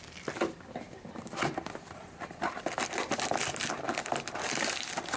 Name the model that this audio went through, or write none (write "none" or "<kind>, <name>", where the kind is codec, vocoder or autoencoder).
none